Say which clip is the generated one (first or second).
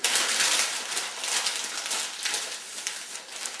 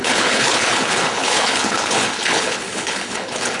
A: second